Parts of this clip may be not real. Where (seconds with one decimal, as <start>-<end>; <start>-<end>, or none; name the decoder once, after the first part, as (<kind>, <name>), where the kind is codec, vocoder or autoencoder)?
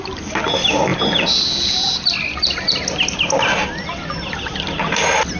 none